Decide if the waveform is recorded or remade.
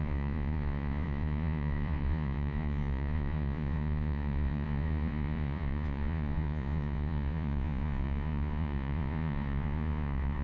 remade